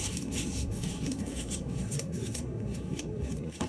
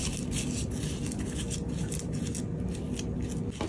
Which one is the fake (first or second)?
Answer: first